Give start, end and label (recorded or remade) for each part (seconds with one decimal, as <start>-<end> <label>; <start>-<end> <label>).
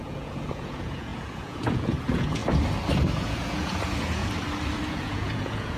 0.0-2.4 remade; 2.4-3.2 recorded; 3.2-4.2 remade; 4.2-4.9 recorded; 4.9-5.8 remade